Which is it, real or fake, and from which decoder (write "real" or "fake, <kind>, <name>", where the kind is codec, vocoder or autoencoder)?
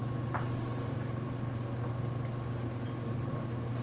real